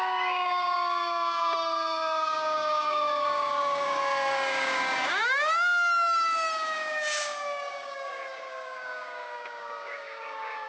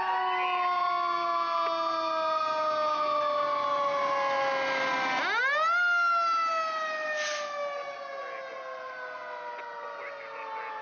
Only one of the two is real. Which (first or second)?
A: second